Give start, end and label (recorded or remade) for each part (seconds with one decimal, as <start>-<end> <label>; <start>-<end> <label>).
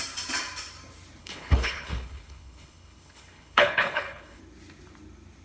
0.0-1.2 recorded; 1.2-4.4 remade; 4.4-5.4 recorded